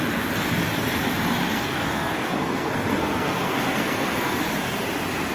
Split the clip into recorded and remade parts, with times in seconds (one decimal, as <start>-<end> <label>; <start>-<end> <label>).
0.0-1.4 recorded; 1.4-4.4 remade; 4.4-5.3 recorded